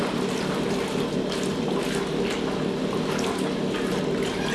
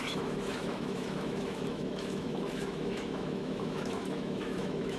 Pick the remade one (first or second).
second